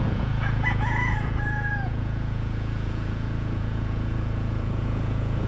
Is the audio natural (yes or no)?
no